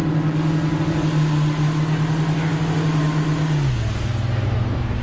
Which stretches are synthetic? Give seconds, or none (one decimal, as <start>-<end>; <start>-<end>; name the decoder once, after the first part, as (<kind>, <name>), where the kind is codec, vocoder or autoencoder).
none